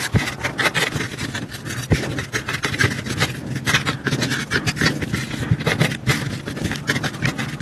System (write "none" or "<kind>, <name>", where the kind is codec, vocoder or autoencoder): none